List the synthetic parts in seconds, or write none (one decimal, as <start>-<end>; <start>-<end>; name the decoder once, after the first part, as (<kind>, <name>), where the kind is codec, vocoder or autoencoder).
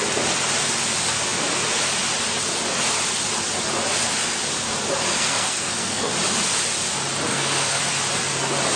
5.1-6.1 (codec, SNAC); 7.3-7.8